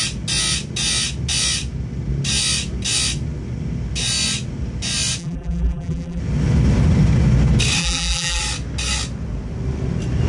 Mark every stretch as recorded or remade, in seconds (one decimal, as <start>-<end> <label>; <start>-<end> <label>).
0.0-5.2 recorded; 5.2-6.2 remade; 6.2-7.8 recorded; 7.8-8.4 remade; 8.4-10.3 recorded